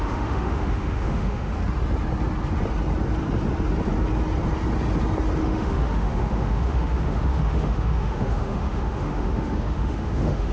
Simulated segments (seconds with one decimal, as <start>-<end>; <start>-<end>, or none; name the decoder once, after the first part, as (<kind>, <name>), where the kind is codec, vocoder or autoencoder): 0.0-1.5 (autoencoder, DAC-VAE); 5.4-10.5